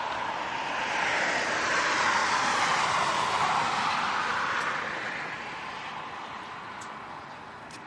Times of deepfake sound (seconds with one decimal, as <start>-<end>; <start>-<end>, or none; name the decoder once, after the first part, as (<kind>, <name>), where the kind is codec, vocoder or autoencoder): none